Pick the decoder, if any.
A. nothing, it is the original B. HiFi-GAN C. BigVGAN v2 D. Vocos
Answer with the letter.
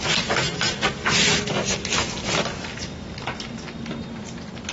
A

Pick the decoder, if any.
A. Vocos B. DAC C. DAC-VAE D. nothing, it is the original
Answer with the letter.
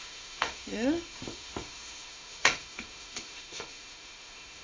C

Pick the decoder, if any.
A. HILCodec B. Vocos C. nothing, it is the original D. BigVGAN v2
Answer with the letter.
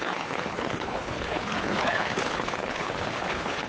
A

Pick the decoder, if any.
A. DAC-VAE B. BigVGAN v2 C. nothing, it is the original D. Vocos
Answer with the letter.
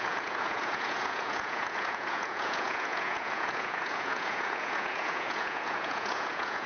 D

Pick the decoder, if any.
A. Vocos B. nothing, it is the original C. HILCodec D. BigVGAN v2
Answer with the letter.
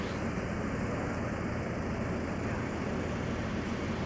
B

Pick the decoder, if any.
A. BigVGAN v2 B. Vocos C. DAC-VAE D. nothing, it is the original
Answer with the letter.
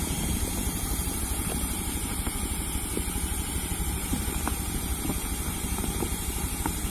A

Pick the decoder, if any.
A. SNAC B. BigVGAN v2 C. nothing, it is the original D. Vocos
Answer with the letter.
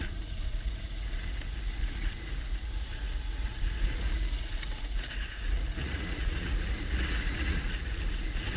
D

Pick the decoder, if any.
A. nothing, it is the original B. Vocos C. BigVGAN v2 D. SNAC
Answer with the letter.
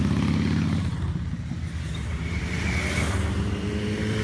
A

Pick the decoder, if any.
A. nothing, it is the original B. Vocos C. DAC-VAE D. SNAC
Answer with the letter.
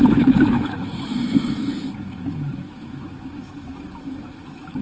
C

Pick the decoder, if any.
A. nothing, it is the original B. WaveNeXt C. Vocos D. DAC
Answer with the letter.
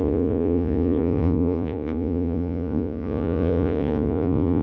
C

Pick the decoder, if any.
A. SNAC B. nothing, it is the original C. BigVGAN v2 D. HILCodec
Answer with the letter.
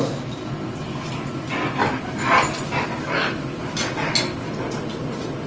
B